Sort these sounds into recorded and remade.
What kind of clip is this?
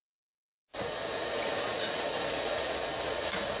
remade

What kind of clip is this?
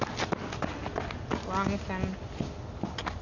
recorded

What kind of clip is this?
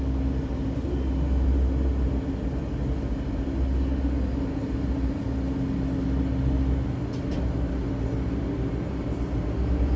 recorded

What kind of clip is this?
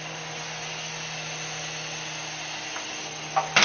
recorded